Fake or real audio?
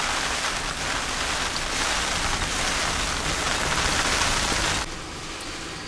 real